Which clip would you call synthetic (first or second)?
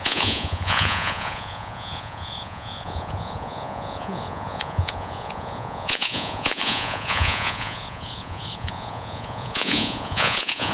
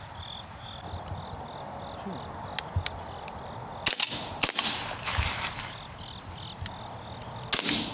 first